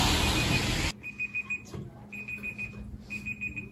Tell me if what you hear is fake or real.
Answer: real